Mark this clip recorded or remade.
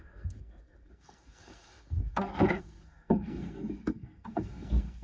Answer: remade